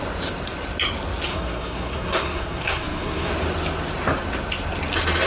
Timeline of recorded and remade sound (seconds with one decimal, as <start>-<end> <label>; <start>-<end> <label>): 0.0-1.3 recorded; 1.3-3.3 remade; 3.3-5.3 recorded